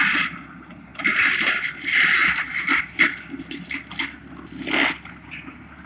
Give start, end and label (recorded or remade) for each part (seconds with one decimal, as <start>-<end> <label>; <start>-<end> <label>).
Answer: 0.0-5.9 recorded